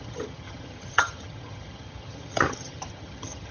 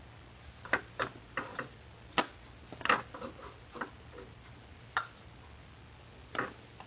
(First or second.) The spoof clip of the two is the first